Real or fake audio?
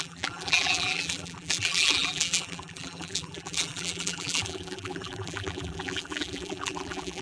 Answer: fake